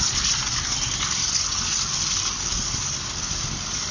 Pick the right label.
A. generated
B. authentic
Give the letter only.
B